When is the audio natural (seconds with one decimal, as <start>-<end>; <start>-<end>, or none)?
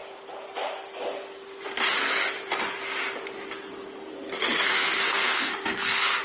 0.0-4.4